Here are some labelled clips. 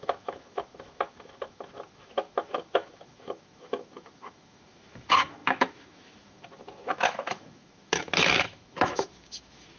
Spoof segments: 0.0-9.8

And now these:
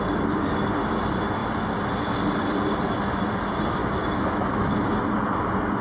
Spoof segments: 3.8-4.9

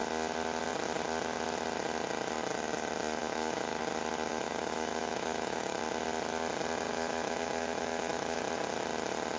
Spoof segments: 3.2-3.8; 4.3-5.8; 6.9-8.4